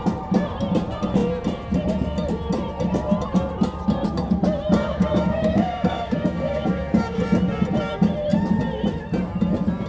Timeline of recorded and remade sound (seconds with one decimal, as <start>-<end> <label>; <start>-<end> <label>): 0.0-4.8 recorded; 4.8-7.2 remade; 7.2-9.9 recorded